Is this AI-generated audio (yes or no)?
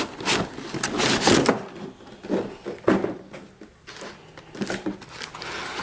no